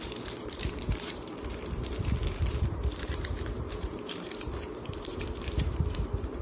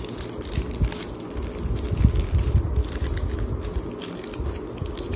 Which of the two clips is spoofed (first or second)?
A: first